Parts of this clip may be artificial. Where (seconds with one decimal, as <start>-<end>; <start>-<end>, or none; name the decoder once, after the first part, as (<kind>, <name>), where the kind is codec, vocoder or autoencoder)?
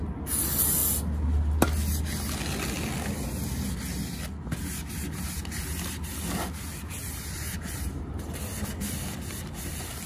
7.0-8.4 (vocoder, BigVGAN v2)